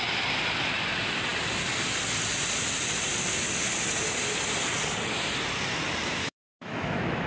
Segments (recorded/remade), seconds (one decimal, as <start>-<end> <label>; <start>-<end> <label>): 0.0-6.2 recorded; 6.2-7.3 remade